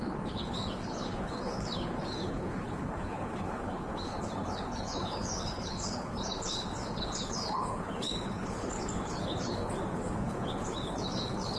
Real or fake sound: fake